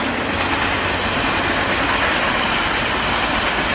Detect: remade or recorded recorded